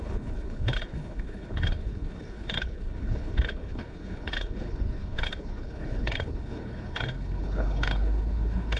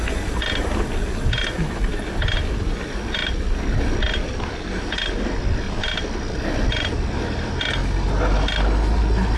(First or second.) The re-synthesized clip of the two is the first